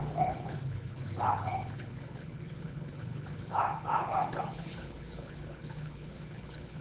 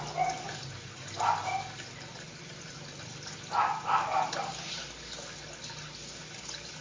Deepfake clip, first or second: first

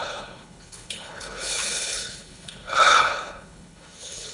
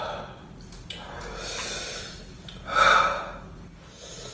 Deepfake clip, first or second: first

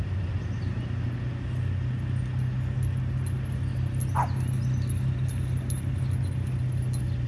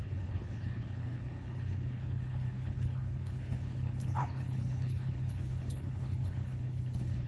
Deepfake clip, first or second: second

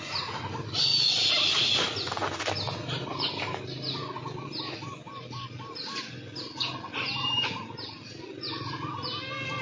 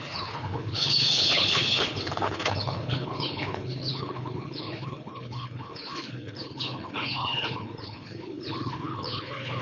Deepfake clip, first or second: second